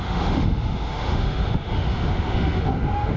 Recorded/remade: remade